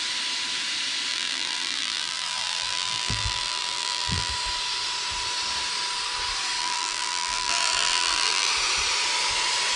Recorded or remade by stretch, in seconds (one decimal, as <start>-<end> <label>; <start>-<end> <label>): 0.0-1.1 recorded; 1.1-4.3 remade; 4.3-6.6 recorded; 6.6-8.5 remade; 8.5-9.8 recorded